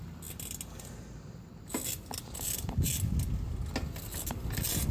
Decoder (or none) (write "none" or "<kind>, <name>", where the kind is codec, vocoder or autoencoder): none